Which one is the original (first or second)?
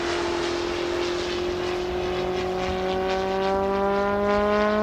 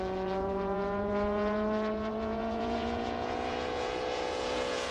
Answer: first